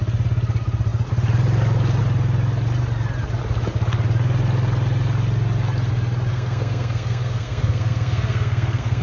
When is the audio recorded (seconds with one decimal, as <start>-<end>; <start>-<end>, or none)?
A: 0.0-6.3